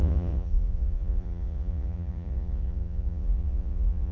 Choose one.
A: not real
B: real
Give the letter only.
A